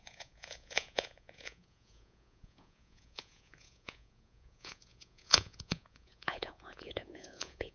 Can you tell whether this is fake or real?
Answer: fake